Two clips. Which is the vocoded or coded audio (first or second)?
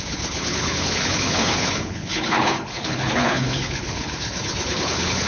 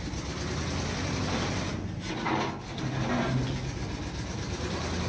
first